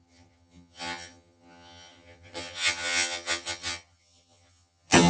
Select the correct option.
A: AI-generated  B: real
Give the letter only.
A